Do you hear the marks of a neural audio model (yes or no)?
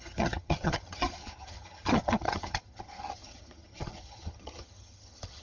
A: yes